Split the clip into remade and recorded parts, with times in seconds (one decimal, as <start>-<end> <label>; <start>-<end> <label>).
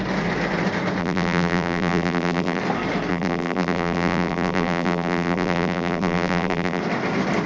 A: 0.0-1.0 recorded; 1.0-2.6 remade; 2.6-3.1 recorded; 3.1-6.8 remade; 6.8-7.5 recorded